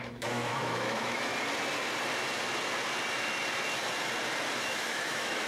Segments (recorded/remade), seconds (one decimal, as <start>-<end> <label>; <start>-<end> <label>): 0.0-1.3 remade; 1.3-4.6 recorded; 4.6-5.5 remade

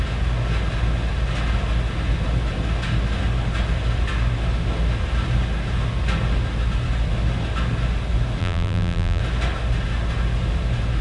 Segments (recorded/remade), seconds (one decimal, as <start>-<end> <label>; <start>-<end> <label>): 0.0-8.4 recorded; 8.4-9.2 remade; 9.2-11.0 recorded

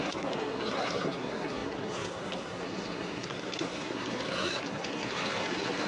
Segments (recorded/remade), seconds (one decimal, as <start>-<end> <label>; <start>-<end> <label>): 0.0-5.9 remade

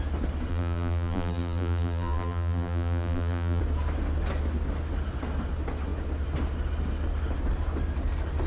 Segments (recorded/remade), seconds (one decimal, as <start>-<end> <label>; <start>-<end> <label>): 0.0-0.5 recorded; 0.5-3.6 remade; 3.6-8.5 recorded

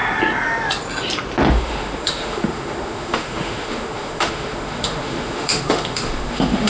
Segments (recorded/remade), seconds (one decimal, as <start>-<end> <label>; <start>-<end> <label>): 0.0-1.5 recorded; 1.5-6.7 remade

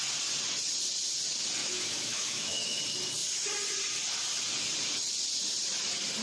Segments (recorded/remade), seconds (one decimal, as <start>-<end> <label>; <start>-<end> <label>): 0.0-1.6 recorded; 1.6-2.8 remade; 2.8-6.2 recorded